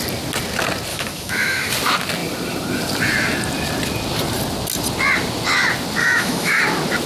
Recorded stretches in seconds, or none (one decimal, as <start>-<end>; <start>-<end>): 0.0-0.9; 1.7-6.0; 6.6-7.1